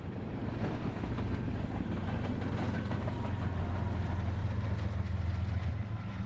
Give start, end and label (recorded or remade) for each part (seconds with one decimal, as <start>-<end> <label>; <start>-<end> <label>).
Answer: 0.0-0.6 recorded; 0.6-1.1 remade; 1.1-6.3 recorded